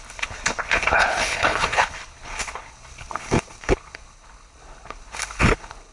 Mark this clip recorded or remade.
remade